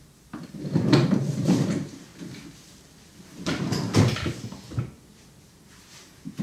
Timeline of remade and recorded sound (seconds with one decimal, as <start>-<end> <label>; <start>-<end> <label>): 0.0-2.1 remade; 2.1-5.4 recorded; 5.4-6.4 remade